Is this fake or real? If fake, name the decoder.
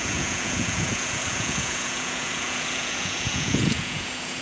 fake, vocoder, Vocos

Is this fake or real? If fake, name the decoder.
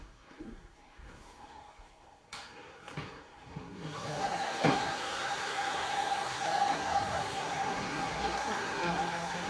fake, codec, SNAC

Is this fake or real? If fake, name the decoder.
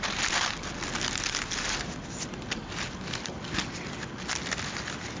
real